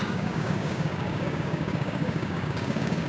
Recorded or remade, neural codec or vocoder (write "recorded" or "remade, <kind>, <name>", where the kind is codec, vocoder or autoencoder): remade, codec, DAC